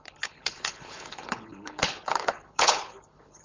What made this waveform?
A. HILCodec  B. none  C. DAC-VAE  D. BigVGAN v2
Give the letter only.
A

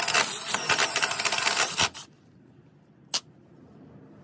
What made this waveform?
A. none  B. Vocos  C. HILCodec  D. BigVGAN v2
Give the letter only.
A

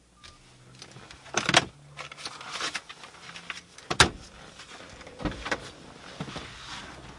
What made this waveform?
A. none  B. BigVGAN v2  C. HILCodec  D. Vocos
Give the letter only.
A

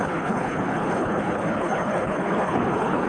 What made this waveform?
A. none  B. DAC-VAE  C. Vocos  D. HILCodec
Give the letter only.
D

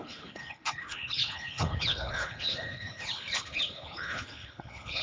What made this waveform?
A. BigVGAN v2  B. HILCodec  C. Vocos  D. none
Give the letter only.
B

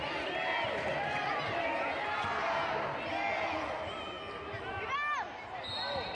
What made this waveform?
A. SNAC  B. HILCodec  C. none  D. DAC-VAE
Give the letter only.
C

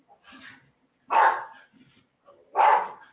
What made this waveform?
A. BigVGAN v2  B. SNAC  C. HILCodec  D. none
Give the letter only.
D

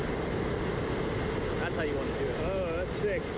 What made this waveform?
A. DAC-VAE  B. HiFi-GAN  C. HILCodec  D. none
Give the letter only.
D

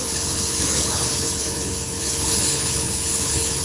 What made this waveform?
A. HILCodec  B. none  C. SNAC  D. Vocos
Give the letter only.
A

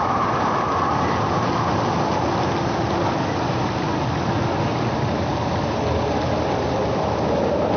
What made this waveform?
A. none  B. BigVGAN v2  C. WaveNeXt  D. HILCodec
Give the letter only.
A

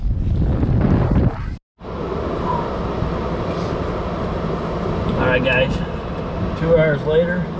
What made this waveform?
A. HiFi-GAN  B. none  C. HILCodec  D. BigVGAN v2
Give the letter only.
B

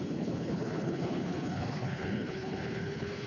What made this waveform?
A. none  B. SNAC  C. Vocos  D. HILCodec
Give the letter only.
D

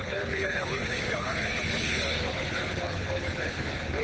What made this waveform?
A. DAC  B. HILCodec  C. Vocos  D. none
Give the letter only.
B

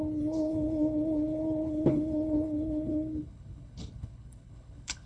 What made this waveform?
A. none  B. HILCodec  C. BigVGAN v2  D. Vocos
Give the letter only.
B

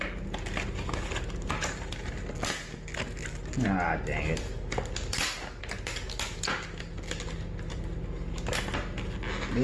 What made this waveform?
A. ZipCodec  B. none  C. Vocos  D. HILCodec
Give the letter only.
B